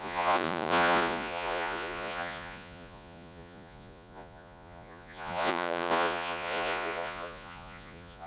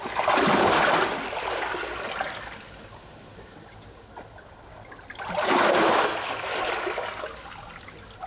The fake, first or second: first